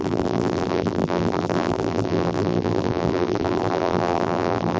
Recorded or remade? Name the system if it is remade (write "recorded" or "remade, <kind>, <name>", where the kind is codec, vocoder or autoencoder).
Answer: remade, vocoder, BigVGAN v2